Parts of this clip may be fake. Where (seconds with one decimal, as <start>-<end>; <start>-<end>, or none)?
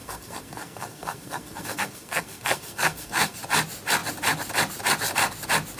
0.0-3.4